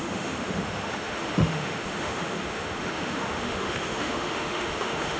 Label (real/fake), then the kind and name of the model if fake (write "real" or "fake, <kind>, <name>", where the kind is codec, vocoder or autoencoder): fake, autoencoder, DAC-VAE